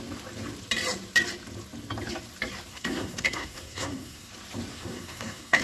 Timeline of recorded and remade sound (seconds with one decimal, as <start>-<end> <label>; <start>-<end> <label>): 0.0-2.7 recorded; 2.7-4.3 remade; 4.3-4.7 recorded; 4.7-5.6 remade